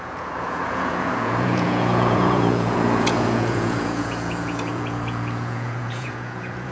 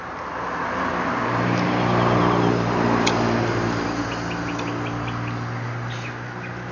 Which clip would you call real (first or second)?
second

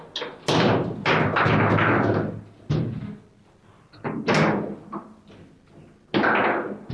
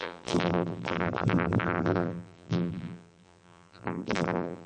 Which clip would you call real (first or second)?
first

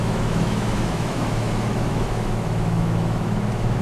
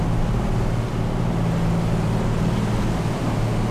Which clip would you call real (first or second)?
second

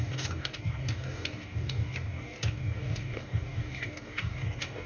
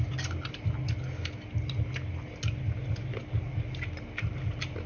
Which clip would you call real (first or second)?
second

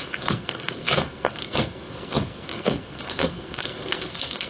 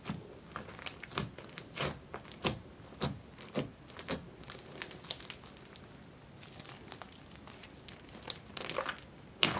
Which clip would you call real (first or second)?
second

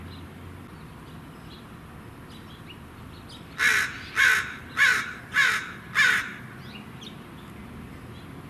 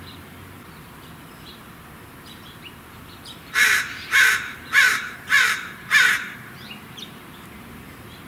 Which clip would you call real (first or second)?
first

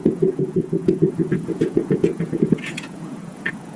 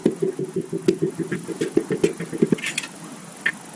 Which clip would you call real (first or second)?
second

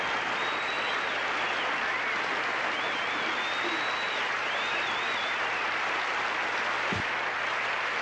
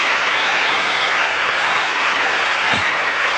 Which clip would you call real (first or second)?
first